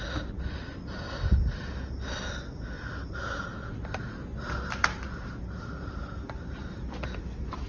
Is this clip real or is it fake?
real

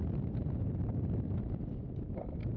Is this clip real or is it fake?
real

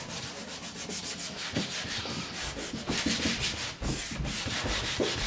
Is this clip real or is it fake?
real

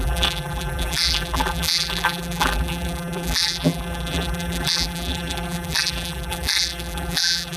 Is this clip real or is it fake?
fake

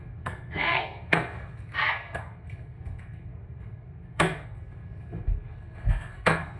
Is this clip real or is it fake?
fake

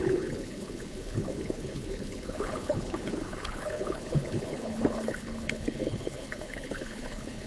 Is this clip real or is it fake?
fake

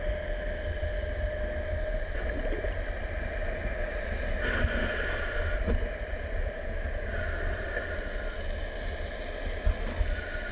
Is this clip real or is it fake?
real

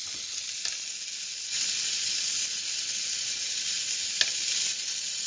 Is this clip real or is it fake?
real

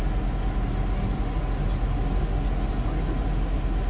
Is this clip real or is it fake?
real